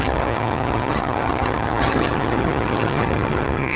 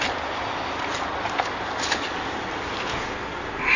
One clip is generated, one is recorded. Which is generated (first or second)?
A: first